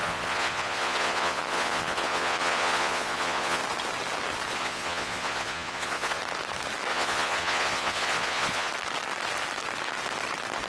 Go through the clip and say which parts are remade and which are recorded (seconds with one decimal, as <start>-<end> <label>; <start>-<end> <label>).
0.0-3.6 remade; 3.6-4.5 recorded; 4.5-6.2 remade; 6.2-6.9 recorded; 6.9-8.7 remade; 8.7-10.7 recorded